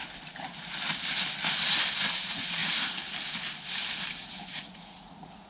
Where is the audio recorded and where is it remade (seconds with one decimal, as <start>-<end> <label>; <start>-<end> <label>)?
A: 0.0-2.1 recorded; 2.1-2.6 remade; 2.6-4.1 recorded; 4.1-5.5 remade